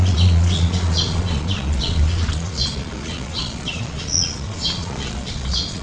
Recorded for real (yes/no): no